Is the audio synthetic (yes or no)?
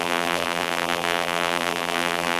yes